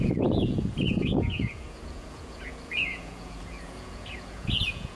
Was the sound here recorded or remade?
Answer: remade